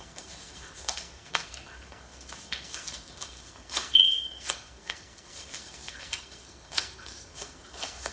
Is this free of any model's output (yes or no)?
no